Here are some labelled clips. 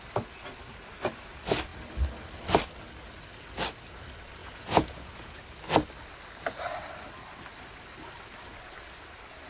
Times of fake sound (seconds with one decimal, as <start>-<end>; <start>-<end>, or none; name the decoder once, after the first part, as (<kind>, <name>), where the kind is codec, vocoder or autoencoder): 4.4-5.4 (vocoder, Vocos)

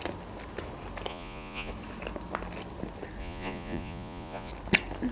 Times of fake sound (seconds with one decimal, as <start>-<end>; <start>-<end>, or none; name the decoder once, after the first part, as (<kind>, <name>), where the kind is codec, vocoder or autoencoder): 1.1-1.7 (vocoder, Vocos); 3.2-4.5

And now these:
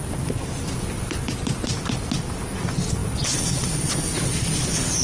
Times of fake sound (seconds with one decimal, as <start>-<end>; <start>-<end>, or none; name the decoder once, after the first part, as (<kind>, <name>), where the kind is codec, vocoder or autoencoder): none